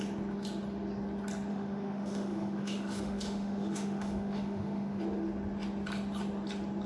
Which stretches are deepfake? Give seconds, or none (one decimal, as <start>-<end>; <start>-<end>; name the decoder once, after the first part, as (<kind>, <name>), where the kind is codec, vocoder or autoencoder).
1.5-5.0 (autoencoder, DAC-VAE)